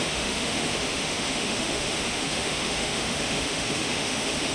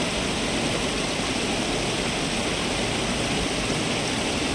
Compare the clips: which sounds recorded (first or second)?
second